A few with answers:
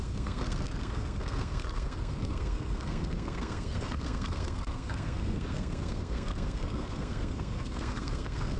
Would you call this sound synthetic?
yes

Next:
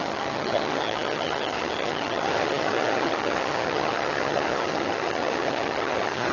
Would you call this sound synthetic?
yes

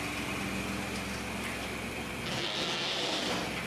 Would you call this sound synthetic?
no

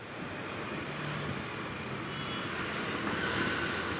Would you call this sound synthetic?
no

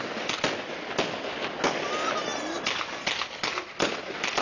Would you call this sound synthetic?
no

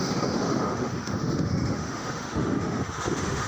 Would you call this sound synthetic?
yes